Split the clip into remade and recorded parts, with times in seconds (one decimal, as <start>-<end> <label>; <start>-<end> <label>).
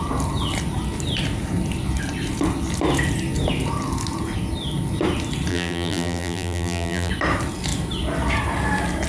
0.0-5.5 recorded; 5.5-7.1 remade; 7.1-9.1 recorded